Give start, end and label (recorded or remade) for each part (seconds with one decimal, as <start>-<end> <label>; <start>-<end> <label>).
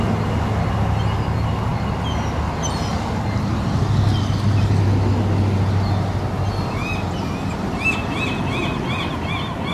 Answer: 0.0-9.7 recorded